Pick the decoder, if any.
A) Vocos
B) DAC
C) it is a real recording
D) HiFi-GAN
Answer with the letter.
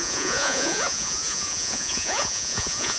A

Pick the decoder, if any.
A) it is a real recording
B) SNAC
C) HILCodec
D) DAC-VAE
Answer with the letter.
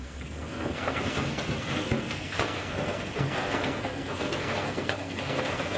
B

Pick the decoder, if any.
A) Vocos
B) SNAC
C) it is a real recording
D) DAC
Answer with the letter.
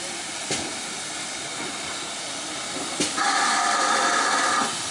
C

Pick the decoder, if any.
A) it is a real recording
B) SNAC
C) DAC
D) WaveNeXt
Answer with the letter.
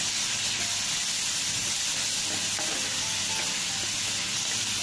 A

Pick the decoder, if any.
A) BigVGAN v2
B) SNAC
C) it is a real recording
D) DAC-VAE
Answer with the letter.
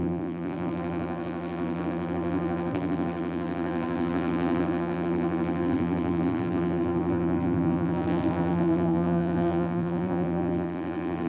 A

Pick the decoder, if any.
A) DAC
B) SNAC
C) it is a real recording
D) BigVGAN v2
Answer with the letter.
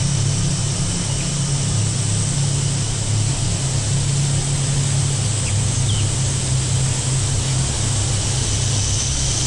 C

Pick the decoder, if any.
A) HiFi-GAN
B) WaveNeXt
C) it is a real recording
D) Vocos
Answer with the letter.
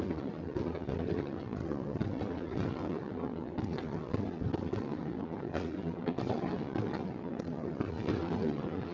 B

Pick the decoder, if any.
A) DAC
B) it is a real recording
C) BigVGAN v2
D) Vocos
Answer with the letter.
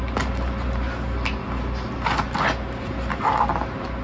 B